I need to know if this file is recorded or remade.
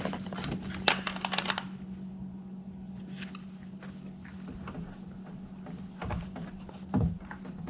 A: recorded